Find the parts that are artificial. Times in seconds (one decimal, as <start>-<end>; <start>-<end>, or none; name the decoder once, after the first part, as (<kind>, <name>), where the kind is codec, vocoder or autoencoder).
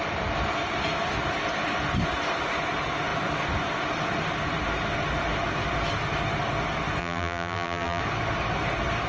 7.0-8.0 (vocoder, BigVGAN v2)